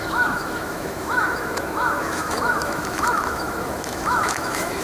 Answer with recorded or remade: remade